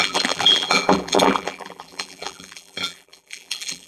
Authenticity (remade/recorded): remade